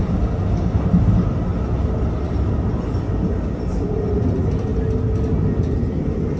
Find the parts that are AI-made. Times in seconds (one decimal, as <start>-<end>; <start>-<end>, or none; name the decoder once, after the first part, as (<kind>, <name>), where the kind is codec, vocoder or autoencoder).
none